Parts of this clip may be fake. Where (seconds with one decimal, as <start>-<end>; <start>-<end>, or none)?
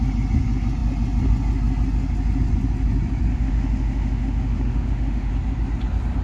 3.3-5.3